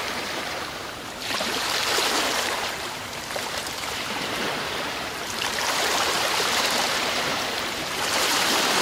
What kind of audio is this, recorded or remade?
remade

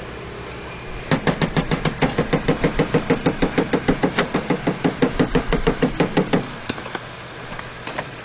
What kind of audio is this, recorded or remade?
recorded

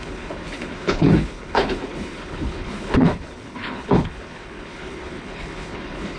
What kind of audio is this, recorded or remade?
remade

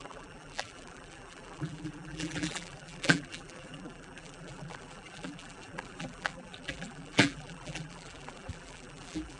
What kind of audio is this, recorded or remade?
remade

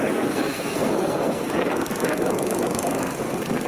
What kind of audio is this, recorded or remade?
remade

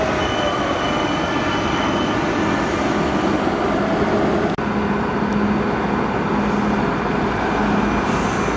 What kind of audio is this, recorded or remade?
recorded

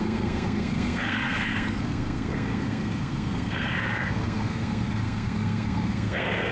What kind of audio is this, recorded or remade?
remade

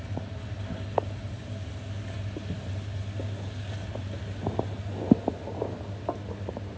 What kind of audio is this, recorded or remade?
recorded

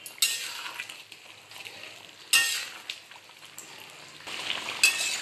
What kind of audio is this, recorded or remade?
recorded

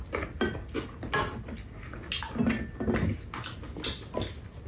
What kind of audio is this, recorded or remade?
recorded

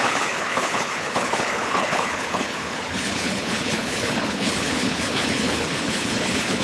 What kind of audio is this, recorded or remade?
remade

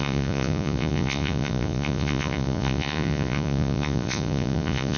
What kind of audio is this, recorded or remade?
remade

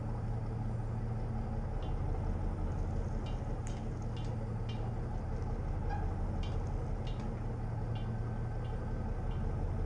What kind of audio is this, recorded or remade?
recorded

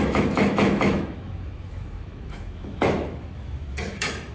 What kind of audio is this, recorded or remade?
remade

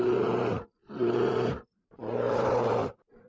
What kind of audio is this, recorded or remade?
remade